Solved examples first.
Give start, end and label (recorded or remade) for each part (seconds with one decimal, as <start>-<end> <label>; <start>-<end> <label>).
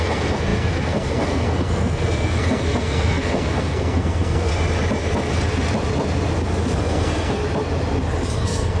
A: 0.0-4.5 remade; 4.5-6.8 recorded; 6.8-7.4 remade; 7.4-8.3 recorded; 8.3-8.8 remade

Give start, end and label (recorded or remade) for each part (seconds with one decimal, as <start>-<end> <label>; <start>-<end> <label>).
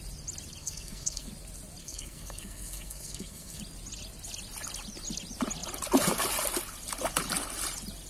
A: 0.0-0.6 recorded; 0.6-1.3 remade; 1.3-1.8 recorded; 1.8-3.6 remade; 3.6-8.1 recorded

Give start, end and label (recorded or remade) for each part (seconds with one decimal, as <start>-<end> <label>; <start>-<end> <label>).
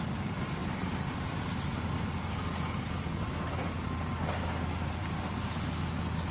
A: 0.0-6.3 recorded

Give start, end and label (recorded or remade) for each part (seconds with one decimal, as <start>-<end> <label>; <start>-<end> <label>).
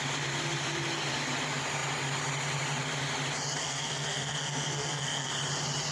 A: 0.0-3.6 recorded; 3.6-5.3 remade; 5.3-5.9 recorded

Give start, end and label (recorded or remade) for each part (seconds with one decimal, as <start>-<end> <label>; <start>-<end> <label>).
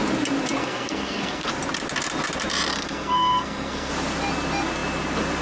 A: 0.0-0.6 recorded; 0.6-1.5 remade; 1.5-2.7 recorded; 2.7-3.9 remade; 3.9-5.4 recorded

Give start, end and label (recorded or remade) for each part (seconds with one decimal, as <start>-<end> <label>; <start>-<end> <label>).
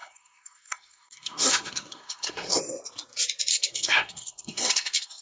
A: 0.0-2.6 remade; 2.6-3.5 recorded; 3.5-5.2 remade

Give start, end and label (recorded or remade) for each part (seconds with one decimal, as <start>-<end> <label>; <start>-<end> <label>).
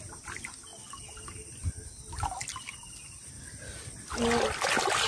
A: 0.0-5.1 recorded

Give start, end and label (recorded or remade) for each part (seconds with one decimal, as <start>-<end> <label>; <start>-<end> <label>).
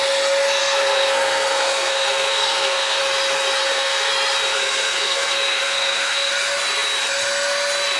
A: 0.0-0.6 recorded; 0.6-3.0 remade; 3.0-3.6 recorded; 3.6-4.1 remade; 4.1-4.5 recorded; 4.5-6.3 remade; 6.3-8.0 recorded